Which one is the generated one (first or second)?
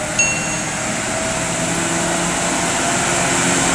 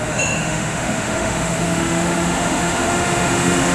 second